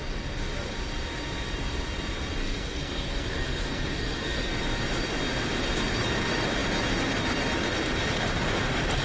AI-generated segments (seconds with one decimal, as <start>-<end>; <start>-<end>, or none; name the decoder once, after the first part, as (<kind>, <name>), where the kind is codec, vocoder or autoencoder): 2.4-4.6 (codec, SNAC)